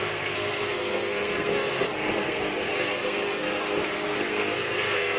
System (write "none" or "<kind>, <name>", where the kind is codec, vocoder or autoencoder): codec, SNAC